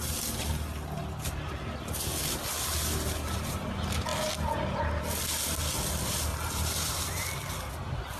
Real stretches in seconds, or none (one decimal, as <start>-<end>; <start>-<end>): 0.0-6.3; 7.7-8.2